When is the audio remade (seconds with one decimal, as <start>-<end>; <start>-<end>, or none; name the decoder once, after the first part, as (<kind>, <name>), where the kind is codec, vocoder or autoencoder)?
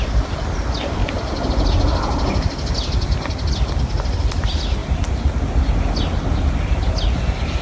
none